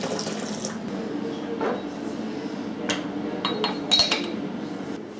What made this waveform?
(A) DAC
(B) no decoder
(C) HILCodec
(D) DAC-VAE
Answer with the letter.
B